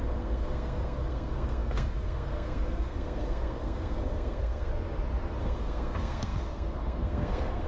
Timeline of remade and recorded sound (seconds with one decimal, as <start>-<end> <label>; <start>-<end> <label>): 0.0-4.7 remade; 4.7-5.4 recorded; 5.4-7.7 remade